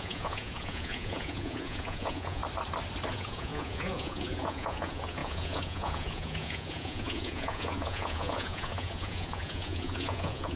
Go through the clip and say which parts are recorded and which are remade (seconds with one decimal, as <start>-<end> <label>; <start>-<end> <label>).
0.0-2.4 remade; 2.4-3.1 recorded; 3.1-10.6 remade